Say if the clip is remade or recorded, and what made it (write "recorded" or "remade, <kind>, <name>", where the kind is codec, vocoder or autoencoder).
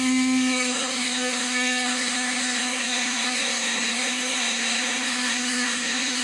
remade, codec, SNAC